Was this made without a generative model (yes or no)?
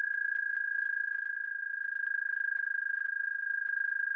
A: yes